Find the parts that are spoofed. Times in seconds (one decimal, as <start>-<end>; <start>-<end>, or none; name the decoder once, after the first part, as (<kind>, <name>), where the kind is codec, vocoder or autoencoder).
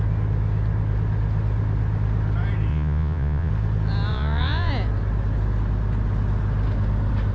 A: 2.7-3.5 (vocoder, Vocos); 4.1-4.7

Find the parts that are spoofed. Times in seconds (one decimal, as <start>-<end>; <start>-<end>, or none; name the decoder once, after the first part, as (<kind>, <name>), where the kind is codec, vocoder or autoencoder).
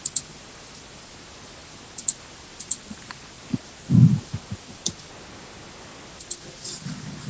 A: none